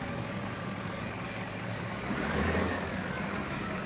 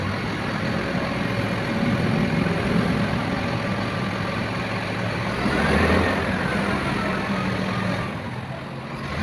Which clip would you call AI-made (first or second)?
first